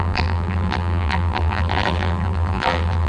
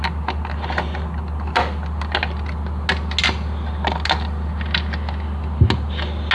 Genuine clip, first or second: second